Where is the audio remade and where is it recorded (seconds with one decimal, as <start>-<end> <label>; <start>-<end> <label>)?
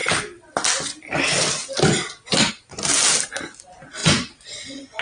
0.0-4.0 recorded; 4.0-5.0 remade